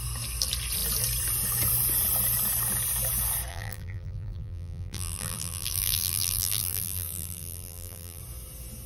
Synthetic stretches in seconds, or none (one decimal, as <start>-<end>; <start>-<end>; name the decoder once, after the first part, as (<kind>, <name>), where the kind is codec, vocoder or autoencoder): 3.5-8.2 (vocoder, BigVGAN v2)